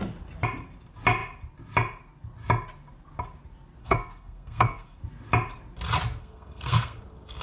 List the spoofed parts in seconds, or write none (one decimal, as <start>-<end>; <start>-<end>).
3.8-5.0; 6.2-7.0